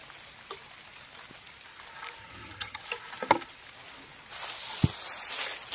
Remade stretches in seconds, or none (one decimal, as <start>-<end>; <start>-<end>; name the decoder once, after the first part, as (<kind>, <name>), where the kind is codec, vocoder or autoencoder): 2.2-2.8 (vocoder, HiFi-GAN)